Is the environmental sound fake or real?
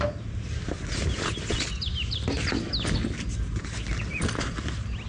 real